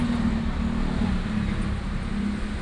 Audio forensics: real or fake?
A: real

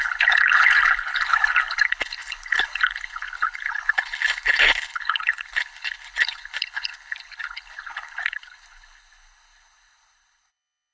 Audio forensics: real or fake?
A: fake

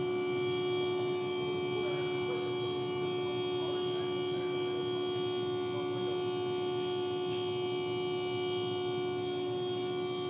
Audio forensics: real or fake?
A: real